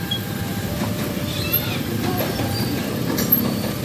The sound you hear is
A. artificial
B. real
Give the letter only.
A